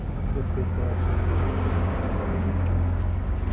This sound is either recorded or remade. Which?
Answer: remade